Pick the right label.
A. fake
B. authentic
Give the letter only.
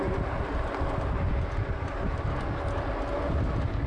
B